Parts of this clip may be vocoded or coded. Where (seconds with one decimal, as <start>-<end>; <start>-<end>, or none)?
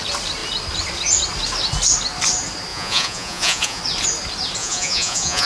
2.7-3.8; 4.6-5.5